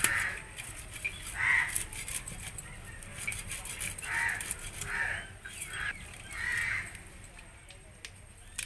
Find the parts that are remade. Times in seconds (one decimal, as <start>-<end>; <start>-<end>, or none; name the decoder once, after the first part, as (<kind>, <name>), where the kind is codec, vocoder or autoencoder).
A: none